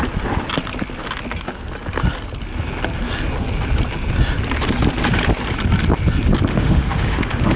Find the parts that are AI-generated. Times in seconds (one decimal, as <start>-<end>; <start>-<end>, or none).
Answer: 6.5-7.6

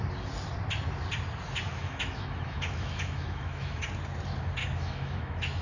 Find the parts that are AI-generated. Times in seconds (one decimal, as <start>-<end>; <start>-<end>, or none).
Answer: 1.8-3.8; 4.6-5.6

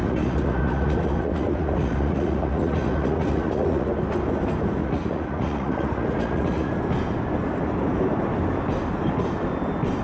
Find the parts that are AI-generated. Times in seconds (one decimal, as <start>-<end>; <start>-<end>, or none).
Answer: 0.0-3.9; 4.8-6.7

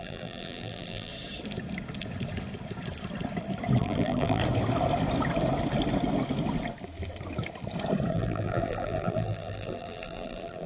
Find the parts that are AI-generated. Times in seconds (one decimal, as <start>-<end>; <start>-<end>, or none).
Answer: 0.0-1.1; 3.8-4.4; 8.1-10.7

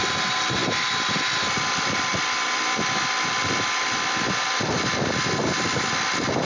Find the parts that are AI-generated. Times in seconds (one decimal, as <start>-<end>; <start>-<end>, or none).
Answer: none

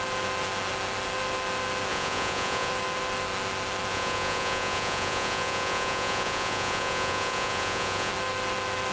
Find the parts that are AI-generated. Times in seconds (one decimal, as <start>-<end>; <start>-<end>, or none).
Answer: 1.9-2.7; 3.9-8.1

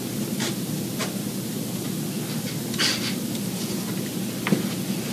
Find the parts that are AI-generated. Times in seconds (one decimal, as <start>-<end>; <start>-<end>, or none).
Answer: none

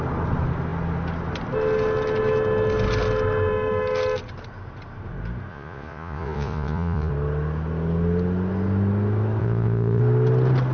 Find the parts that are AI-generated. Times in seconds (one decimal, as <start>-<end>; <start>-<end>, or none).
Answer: 5.5-7.1; 9.4-10.0